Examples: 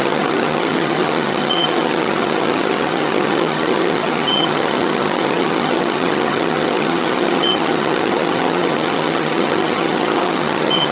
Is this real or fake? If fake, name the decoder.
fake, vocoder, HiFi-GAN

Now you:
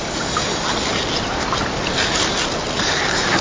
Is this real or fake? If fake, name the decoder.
real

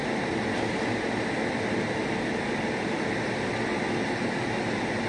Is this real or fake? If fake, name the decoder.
real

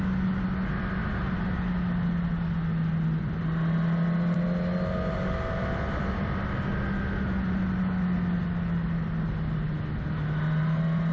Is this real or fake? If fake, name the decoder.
real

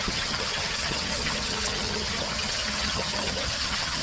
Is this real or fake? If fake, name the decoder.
fake, vocoder, HiFi-GAN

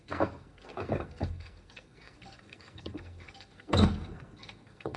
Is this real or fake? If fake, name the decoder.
fake, codec, SNAC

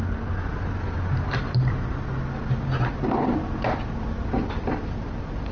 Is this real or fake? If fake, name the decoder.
real